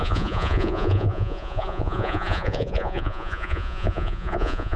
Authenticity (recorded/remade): remade